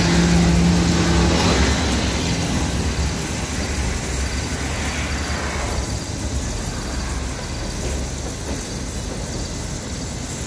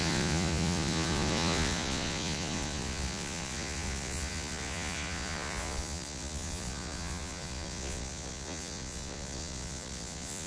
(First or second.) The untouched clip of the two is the first